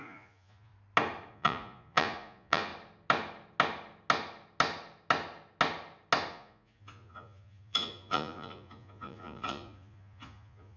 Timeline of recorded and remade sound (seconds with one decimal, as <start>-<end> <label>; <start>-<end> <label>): 0.0-0.7 remade; 0.7-1.3 recorded; 1.3-2.7 remade; 2.7-6.3 recorded; 6.3-10.8 remade